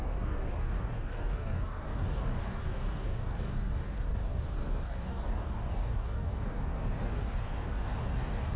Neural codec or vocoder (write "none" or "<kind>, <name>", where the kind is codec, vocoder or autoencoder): codec, DAC